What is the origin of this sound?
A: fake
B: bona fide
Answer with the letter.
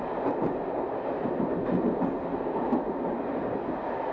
B